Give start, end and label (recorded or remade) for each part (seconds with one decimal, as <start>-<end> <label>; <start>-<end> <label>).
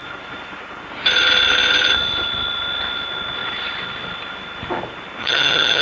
0.0-5.2 recorded; 5.2-5.8 remade